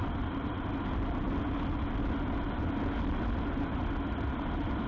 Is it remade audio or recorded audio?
recorded